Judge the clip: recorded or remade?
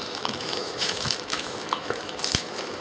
remade